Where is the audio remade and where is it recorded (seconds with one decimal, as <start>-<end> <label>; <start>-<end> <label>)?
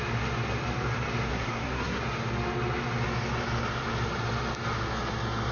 0.0-1.3 recorded; 1.3-2.0 remade; 2.0-5.5 recorded